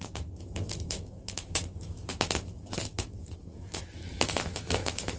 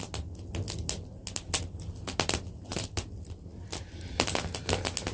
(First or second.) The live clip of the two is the second